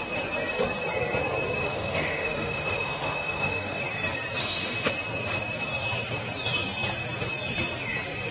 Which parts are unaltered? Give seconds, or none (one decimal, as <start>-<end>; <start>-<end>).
0.0-1.6; 3.8-4.4; 4.9-8.3